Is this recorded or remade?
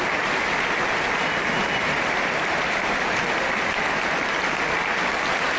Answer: recorded